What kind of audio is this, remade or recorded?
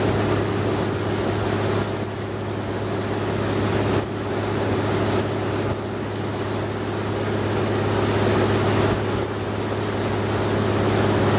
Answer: recorded